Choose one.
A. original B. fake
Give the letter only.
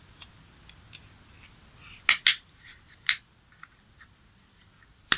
A